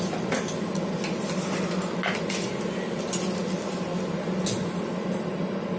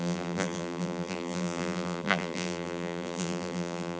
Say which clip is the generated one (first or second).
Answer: second